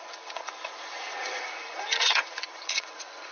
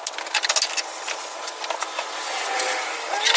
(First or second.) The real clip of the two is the second